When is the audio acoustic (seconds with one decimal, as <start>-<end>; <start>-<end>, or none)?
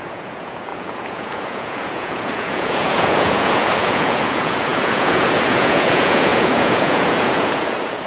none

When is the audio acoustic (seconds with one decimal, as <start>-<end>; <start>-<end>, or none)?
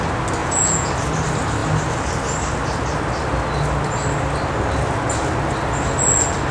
0.0-0.4; 0.9-6.5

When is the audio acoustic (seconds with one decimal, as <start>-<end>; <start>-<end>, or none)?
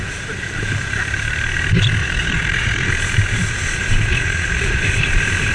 0.0-2.0; 2.9-4.1; 4.8-5.5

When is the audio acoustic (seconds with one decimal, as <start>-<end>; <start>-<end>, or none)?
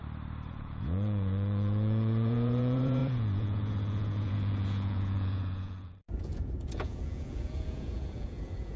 0.0-0.5